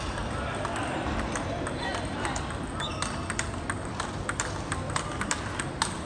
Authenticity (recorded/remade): recorded